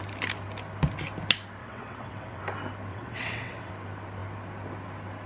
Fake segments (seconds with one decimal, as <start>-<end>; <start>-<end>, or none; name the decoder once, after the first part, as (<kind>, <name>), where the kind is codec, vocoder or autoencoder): 1.6-2.4 (vocoder, WaveNeXt); 2.9-3.7